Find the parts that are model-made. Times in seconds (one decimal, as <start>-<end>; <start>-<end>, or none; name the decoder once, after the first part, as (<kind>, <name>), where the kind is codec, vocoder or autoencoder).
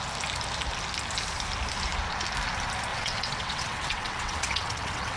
2.9-5.2 (vocoder, WaveNeXt)